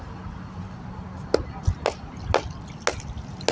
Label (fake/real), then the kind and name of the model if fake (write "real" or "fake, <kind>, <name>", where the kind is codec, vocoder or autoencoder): real